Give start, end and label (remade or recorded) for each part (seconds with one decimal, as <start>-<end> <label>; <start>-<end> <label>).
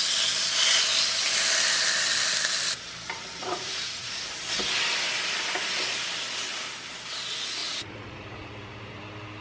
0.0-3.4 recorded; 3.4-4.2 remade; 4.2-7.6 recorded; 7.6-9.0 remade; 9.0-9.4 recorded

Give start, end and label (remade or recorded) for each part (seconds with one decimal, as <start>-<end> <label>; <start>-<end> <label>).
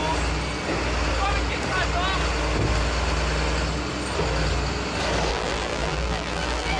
0.0-5.3 recorded; 5.3-6.8 remade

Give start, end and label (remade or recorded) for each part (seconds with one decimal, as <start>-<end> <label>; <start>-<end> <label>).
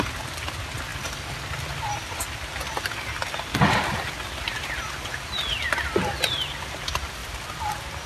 0.0-0.9 recorded; 0.9-2.2 remade; 2.2-7.2 recorded; 7.2-8.1 remade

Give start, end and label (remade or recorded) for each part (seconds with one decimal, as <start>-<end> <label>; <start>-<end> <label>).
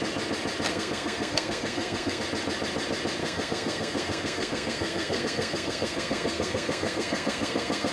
0.0-0.7 recorded; 0.7-2.2 remade; 2.2-3.2 recorded; 3.2-7.9 remade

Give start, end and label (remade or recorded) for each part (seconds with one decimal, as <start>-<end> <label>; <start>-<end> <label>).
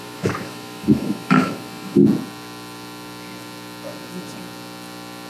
0.0-2.0 remade; 2.0-5.3 recorded